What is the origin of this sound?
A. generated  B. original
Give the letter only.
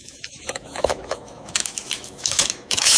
A